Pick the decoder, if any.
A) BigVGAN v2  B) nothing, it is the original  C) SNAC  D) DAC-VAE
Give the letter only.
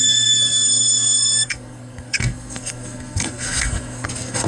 C